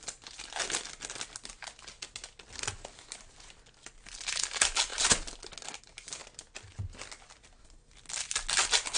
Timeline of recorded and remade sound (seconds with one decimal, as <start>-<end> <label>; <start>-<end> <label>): 0.0-9.0 recorded